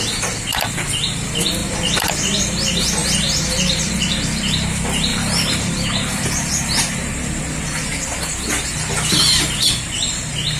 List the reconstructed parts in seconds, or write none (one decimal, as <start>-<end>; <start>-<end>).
5.1-6.3